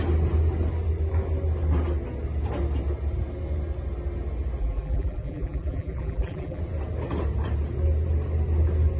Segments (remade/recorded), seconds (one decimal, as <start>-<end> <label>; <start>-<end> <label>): 0.0-4.6 recorded; 4.6-6.6 remade; 6.6-9.0 recorded